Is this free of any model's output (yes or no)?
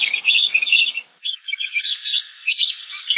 no